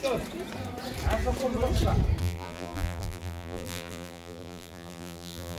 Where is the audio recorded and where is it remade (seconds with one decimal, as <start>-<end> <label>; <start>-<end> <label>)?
0.0-2.2 recorded; 2.2-5.6 remade